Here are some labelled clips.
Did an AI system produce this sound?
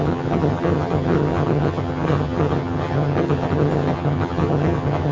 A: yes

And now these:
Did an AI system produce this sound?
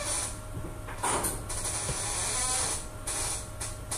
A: no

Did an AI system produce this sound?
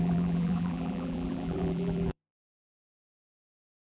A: yes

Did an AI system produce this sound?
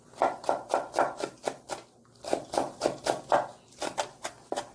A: no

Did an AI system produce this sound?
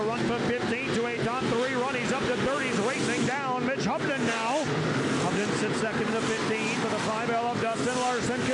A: no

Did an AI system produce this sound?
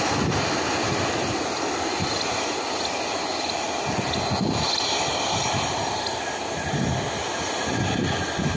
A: no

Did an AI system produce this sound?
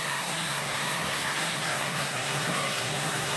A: yes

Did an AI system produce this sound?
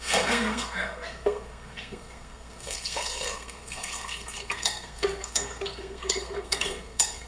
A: yes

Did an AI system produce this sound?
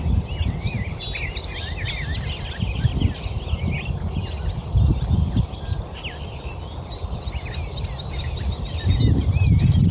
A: no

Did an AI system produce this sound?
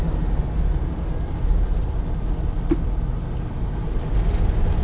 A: no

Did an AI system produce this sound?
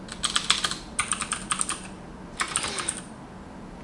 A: no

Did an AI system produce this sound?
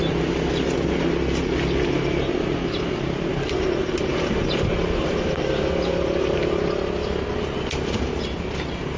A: no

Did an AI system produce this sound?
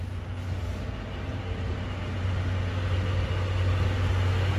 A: no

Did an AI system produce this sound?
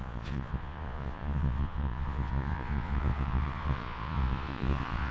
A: yes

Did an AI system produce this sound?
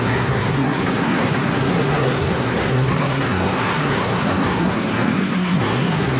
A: yes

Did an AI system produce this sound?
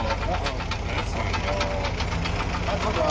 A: no